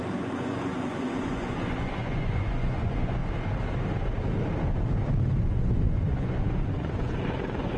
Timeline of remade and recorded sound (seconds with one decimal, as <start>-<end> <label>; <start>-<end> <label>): 0.0-3.2 remade; 3.2-5.4 recorded; 5.4-7.8 remade